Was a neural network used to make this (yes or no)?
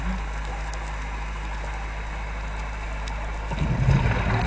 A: no